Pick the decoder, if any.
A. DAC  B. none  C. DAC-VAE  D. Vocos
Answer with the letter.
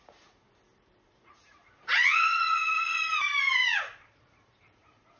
D